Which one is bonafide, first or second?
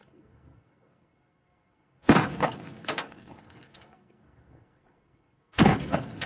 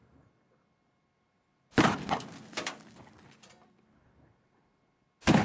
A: second